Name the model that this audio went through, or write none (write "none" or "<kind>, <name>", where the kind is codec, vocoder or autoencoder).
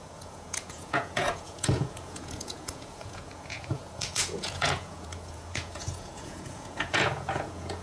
vocoder, Vocos